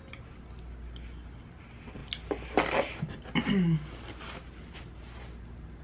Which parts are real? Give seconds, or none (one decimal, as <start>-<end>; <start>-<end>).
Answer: 0.0-5.8